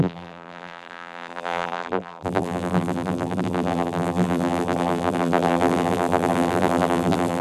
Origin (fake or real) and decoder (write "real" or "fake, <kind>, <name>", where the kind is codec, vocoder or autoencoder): fake, vocoder, BigVGAN v2